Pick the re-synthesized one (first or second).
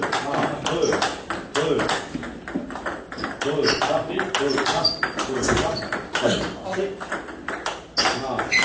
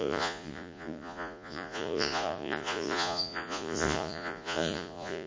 second